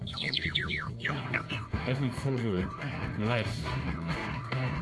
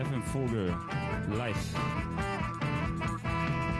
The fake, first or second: first